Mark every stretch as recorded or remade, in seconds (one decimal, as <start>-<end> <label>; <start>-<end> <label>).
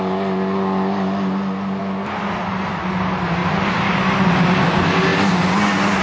0.0-6.0 recorded